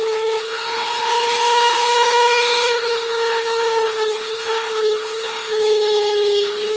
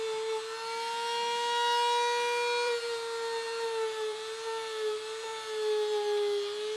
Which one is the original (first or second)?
second